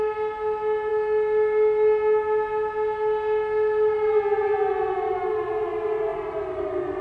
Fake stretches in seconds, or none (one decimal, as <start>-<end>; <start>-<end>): none